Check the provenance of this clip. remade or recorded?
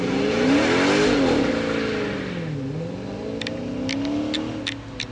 recorded